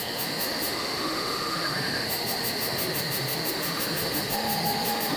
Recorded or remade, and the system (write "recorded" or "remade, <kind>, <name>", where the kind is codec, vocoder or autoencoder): remade, autoencoder, DAC-VAE